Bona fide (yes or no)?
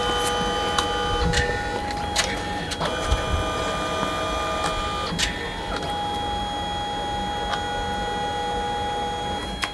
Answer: yes